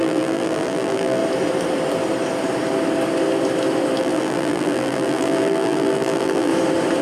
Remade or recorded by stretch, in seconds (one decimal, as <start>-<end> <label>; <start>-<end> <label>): 0.0-1.2 remade; 1.2-4.0 recorded; 4.0-6.5 remade; 6.5-7.0 recorded